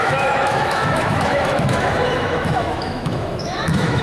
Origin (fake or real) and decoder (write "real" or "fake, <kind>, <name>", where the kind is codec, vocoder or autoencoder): fake, autoencoder, DAC-VAE